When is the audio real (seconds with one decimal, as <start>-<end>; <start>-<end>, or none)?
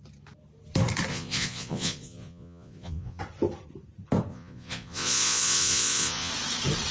0.0-1.1; 3.2-4.3; 6.3-6.9